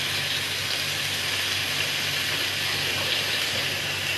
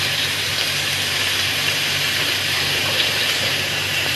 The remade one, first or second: second